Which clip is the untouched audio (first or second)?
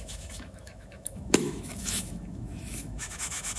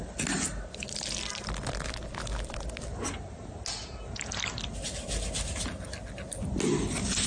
second